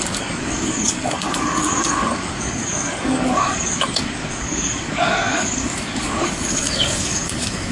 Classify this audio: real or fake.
fake